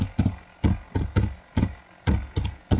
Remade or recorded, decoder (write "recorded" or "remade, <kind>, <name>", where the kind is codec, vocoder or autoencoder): recorded